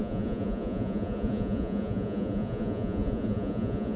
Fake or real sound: fake